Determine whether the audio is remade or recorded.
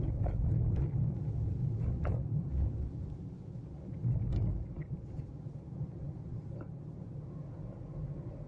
recorded